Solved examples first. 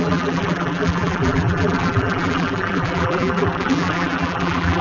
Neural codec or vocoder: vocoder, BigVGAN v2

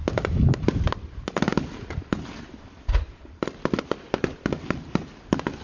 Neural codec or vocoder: vocoder, BigVGAN v2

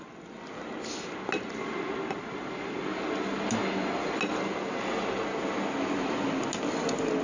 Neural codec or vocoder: none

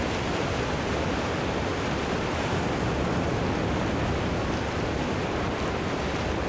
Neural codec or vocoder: none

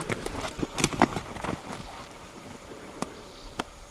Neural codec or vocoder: vocoder, BigVGAN v2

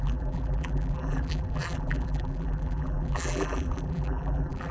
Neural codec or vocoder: vocoder, BigVGAN v2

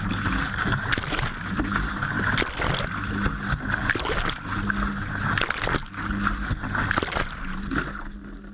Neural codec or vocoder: none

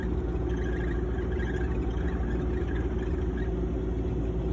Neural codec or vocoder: none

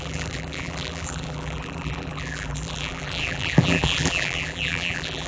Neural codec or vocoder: vocoder, BigVGAN v2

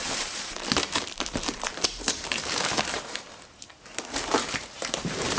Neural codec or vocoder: vocoder, BigVGAN v2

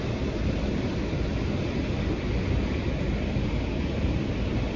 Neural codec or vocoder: none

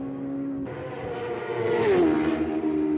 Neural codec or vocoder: none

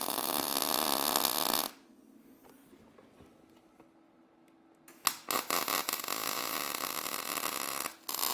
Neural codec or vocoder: none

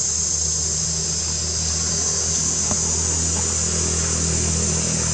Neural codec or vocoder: none